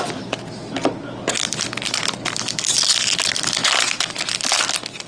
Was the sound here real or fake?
real